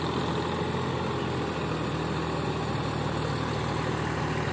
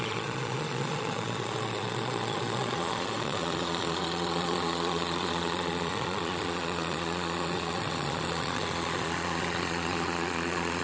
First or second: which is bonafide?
first